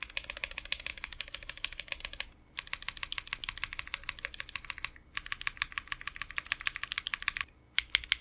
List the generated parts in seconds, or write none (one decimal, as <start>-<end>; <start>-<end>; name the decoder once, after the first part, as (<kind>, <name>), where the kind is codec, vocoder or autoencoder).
0.9-1.9 (codec, DAC)